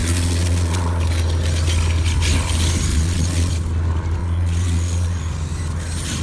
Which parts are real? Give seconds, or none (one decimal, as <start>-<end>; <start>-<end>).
1.0-2.9; 3.5-4.2; 5.2-6.2